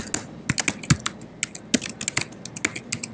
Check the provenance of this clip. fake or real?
real